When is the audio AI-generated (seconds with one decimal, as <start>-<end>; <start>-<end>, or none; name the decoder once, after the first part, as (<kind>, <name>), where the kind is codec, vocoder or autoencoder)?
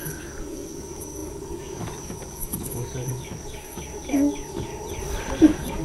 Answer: 0.0-4.7 (codec, DAC); 5.3-5.8